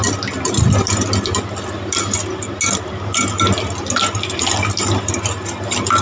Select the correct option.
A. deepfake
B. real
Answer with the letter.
B